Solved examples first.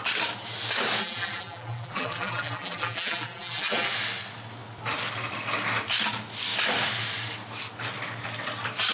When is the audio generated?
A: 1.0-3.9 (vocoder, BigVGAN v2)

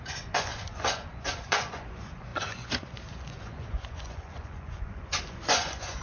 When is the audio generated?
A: 0.0-6.0 (vocoder, Vocos)